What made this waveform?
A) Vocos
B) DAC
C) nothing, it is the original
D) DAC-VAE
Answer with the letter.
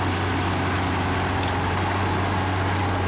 C